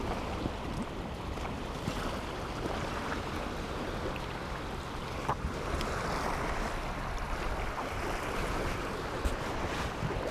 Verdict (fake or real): fake